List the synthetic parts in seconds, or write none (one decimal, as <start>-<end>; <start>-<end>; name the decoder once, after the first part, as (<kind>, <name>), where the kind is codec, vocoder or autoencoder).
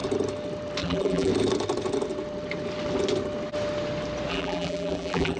0.8-1.3 (vocoder, BigVGAN v2); 4.3-5.4